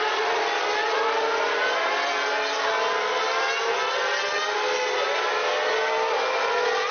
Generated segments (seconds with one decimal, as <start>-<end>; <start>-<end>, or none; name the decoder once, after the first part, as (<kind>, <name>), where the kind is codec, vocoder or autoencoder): none